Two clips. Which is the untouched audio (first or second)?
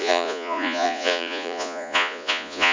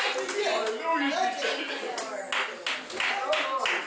second